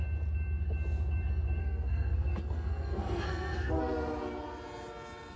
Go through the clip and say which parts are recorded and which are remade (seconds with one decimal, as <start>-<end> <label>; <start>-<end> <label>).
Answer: 0.0-1.6 recorded; 1.6-3.8 remade; 3.8-5.4 recorded

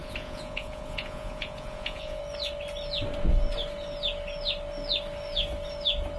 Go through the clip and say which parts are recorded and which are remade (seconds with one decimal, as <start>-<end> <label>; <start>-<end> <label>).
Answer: 0.0-2.2 remade; 2.2-6.2 recorded

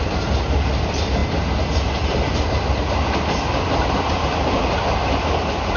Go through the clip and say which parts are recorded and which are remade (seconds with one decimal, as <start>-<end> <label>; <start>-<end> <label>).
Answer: 0.0-5.8 recorded

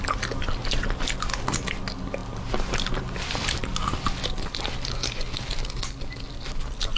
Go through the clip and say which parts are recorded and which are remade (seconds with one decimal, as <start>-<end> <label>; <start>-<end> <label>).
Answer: 0.0-7.0 recorded

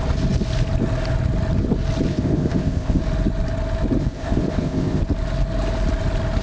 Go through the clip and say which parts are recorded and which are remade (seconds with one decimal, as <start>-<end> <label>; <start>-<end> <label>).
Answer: 0.0-2.1 recorded; 2.1-3.0 remade; 3.0-4.0 recorded; 4.0-5.0 remade; 5.0-6.4 recorded

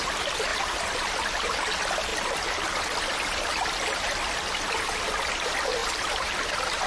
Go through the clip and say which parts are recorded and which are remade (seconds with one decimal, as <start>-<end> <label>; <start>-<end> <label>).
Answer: 0.0-0.5 recorded; 0.5-1.0 remade; 1.0-2.1 recorded; 2.1-4.7 remade; 4.7-6.9 recorded

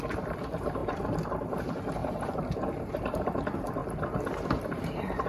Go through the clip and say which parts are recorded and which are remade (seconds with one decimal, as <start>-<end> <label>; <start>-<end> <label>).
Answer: 0.0-3.8 remade; 3.8-4.6 recorded; 4.6-5.3 remade

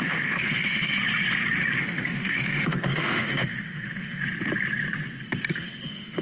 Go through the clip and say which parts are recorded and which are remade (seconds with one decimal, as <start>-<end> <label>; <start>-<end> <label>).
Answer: 0.0-1.0 remade; 1.0-1.8 recorded; 1.8-4.2 remade; 4.2-5.5 recorded; 5.5-6.2 remade